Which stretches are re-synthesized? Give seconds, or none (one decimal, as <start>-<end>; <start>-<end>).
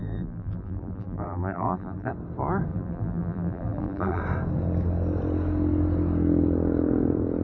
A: 0.0-2.1; 2.7-4.2